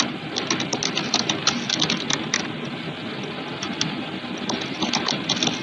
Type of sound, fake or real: real